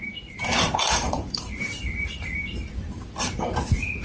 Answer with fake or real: fake